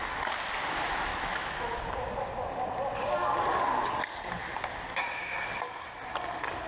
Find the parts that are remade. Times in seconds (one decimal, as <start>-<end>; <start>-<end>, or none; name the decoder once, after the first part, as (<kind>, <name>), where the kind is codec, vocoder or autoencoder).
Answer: 1.1-1.6 (autoencoder, DAC-VAE)